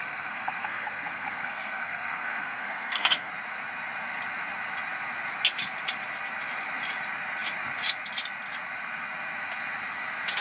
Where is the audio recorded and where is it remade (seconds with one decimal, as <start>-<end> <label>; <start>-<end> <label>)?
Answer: 0.0-3.3 remade; 3.3-10.4 recorded